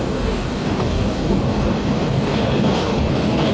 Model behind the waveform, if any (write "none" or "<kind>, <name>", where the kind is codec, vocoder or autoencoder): codec, DAC